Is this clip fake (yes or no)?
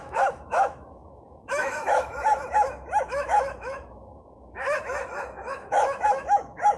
yes